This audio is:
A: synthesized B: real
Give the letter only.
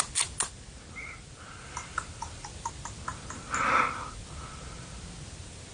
B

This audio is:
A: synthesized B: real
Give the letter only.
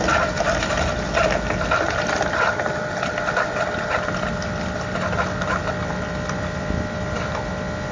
B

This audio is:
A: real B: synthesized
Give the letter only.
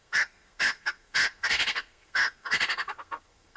B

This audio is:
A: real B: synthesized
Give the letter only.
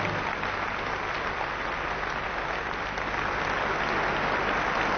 A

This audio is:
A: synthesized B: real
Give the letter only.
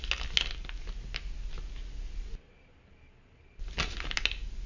B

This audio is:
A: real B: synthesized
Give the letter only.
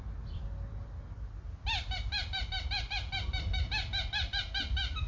A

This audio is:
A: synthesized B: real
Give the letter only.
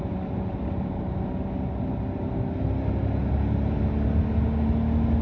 B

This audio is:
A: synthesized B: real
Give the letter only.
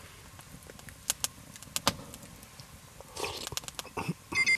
B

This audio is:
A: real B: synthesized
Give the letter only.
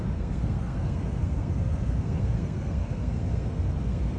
B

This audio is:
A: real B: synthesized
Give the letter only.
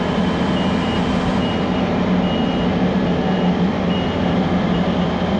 A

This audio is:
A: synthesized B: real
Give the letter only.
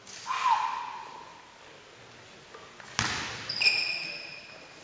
B